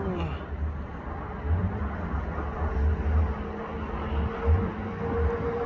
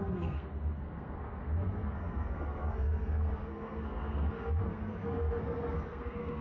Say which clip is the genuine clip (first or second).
first